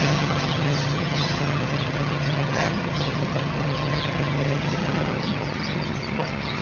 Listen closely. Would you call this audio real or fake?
fake